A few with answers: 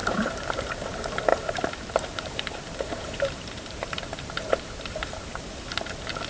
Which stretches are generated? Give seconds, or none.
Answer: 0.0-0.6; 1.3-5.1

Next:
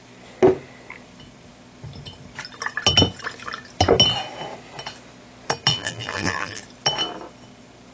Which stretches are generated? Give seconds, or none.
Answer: 5.7-6.6